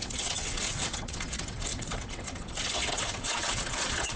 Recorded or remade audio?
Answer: remade